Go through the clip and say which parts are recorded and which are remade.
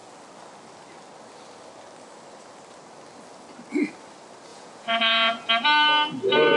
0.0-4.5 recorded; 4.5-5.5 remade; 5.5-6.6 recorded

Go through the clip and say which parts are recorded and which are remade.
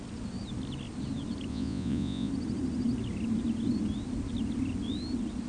0.0-1.5 recorded; 1.5-2.3 remade; 2.3-5.5 recorded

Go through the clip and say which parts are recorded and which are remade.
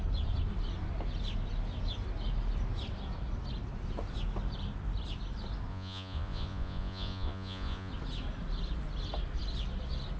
0.0-5.7 recorded; 5.7-7.9 remade; 7.9-10.2 recorded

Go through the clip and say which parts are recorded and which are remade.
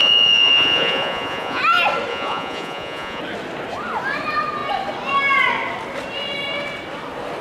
0.0-1.6 remade; 1.6-2.1 recorded; 2.1-3.2 remade; 3.2-7.4 recorded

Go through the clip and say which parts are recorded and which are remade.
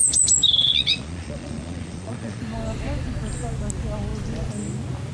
0.0-0.6 recorded; 0.6-2.4 remade; 2.4-5.1 recorded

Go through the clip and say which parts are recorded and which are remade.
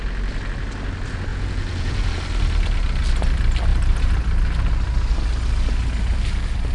0.0-1.3 recorded; 1.3-2.1 remade; 2.1-6.7 recorded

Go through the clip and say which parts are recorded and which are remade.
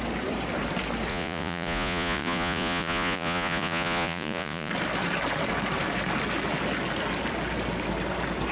0.0-1.1 recorded; 1.1-4.7 remade; 4.7-8.5 recorded